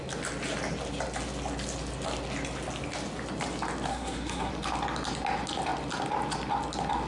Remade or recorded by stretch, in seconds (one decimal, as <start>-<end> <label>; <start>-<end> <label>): 0.0-3.9 recorded; 3.9-4.5 remade; 4.5-7.1 recorded